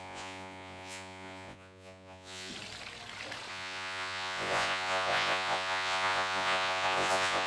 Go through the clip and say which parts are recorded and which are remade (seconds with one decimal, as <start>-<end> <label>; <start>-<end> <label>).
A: 0.0-2.5 remade; 2.5-3.5 recorded; 3.5-7.5 remade